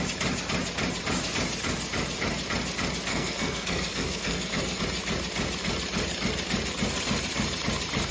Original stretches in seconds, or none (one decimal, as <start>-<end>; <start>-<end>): 0.0-3.1; 4.8-8.1